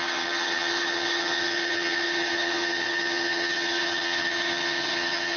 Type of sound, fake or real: fake